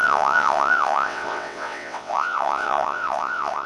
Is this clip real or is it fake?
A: fake